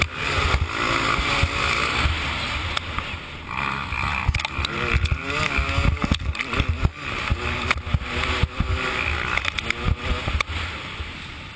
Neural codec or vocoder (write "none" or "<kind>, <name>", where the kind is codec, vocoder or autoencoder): none